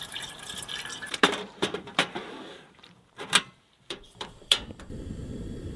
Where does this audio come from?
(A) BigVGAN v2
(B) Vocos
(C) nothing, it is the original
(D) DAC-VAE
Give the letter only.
A